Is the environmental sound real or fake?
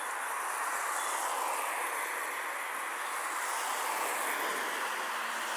real